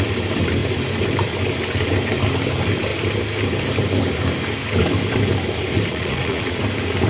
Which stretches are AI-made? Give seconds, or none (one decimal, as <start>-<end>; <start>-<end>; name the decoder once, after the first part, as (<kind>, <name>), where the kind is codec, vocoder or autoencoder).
5.9-6.6 (vocoder, Vocos)

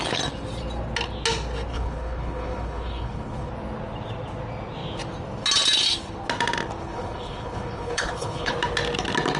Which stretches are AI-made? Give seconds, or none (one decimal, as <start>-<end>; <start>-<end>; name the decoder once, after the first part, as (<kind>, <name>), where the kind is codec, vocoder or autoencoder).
1.7-3.5 (codec, HILCodec); 6.8-8.5

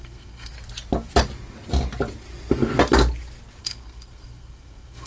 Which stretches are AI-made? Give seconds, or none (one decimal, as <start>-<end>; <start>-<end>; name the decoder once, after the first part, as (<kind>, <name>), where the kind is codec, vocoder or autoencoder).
0.0-0.5 (codec, SNAC); 3.6-5.1

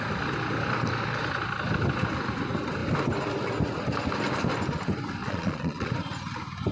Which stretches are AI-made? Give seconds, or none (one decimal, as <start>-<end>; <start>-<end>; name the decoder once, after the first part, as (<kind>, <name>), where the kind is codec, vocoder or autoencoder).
5.2-5.9 (vocoder, Vocos)

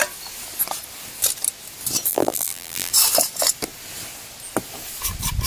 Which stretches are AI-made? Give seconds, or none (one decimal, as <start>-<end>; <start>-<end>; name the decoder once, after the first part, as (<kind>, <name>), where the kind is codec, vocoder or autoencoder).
2.1-2.9 (vocoder, BigVGAN v2)

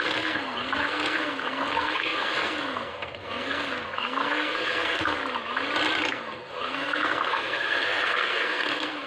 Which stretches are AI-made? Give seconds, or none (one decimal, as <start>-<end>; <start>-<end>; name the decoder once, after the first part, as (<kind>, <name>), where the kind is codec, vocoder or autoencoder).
0.0-5.2 (codec, SNAC); 6.1-9.1